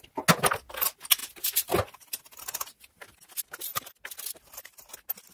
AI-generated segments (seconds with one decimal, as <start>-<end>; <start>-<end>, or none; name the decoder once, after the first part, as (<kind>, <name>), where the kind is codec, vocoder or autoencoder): none